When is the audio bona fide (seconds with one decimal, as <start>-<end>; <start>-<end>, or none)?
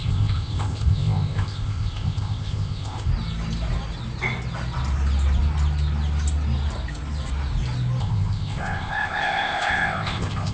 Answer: 3.1-8.0